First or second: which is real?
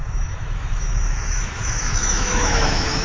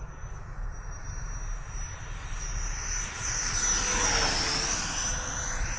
second